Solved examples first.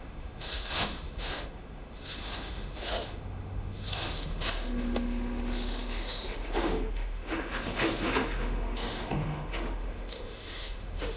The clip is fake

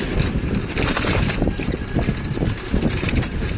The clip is fake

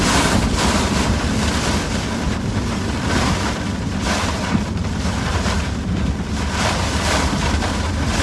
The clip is fake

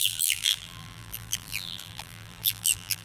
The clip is fake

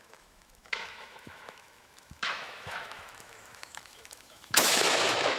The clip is fake